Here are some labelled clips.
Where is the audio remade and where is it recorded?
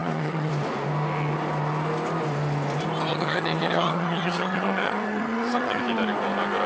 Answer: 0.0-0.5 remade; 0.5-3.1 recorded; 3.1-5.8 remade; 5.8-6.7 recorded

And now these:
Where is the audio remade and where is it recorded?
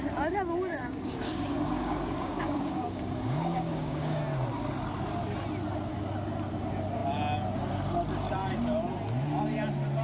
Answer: 0.0-0.8 recorded; 0.8-4.2 remade; 4.2-10.0 recorded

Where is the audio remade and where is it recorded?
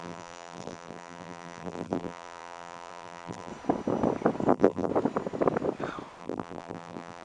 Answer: 0.0-3.5 remade; 3.5-4.5 recorded; 4.5-4.9 remade; 4.9-6.2 recorded; 6.2-7.2 remade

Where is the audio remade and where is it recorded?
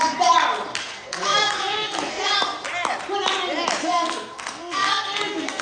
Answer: 0.0-0.8 recorded; 0.8-2.2 remade; 2.2-3.8 recorded; 3.8-5.6 remade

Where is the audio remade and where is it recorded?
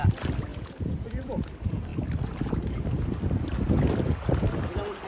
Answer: 0.0-0.5 recorded; 0.5-1.5 remade; 1.5-5.1 recorded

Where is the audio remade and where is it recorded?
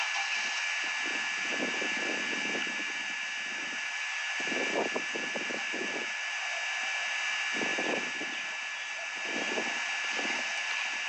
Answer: 0.0-3.5 recorded; 3.5-6.4 remade; 6.4-11.1 recorded